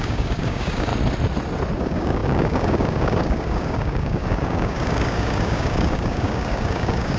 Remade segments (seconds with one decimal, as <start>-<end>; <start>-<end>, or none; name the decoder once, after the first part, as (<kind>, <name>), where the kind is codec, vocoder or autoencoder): 0.0-0.9 (codec, DAC); 1.8-7.2